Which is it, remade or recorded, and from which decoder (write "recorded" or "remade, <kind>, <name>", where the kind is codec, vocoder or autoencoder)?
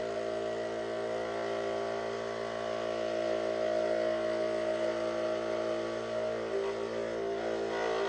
recorded